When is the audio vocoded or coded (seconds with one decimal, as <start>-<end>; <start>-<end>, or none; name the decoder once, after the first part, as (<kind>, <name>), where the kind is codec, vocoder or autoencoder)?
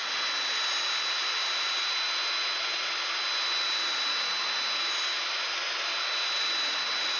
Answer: none